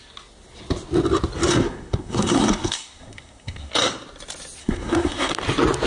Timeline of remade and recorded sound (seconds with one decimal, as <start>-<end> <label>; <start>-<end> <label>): 0.0-1.5 recorded; 1.5-3.7 remade; 3.7-4.6 recorded; 4.6-5.3 remade; 5.3-5.9 recorded